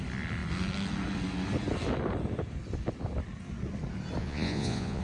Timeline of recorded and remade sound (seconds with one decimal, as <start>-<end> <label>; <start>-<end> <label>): 0.0-4.2 recorded; 4.2-5.0 remade